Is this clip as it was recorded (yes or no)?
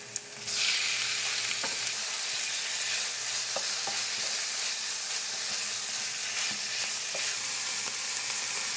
yes